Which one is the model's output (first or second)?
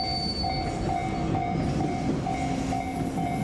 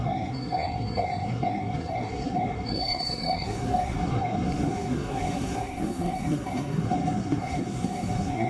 second